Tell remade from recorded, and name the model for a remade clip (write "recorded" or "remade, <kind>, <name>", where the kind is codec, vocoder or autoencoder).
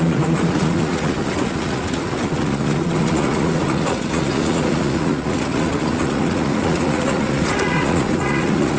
remade, vocoder, Vocos